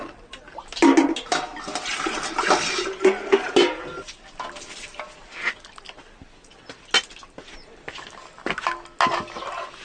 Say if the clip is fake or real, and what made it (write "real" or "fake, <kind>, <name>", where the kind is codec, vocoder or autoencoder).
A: real